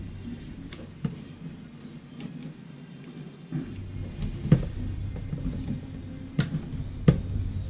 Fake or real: real